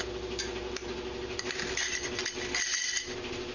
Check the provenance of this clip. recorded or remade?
recorded